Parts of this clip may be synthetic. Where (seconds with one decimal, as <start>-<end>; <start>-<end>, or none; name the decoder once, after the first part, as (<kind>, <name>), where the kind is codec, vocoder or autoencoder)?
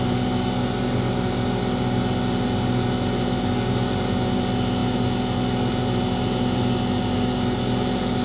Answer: none